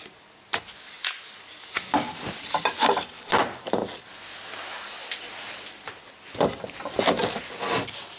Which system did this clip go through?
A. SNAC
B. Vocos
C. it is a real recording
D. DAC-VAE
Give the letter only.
C